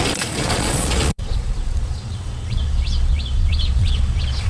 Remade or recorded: remade